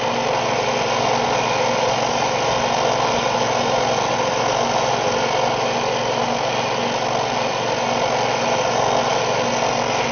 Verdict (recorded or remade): recorded